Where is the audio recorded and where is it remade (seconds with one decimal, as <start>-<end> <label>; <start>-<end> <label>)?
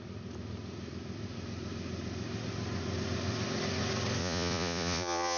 0.0-4.2 recorded; 4.2-5.4 remade